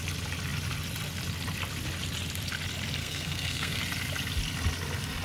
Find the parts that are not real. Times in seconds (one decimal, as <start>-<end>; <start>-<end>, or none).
3.0-3.8

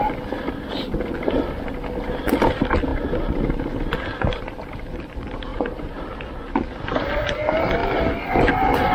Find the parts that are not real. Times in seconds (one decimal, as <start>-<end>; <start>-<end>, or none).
none

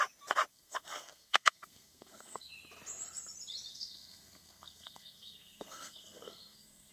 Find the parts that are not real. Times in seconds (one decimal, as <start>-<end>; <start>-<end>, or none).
0.5-2.5; 3.7-6.9

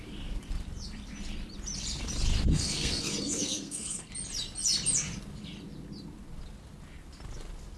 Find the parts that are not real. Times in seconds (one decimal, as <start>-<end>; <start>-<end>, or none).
2.5-4.1

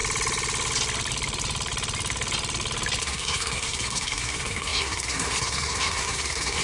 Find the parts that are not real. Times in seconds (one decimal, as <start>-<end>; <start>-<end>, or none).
3.0-6.6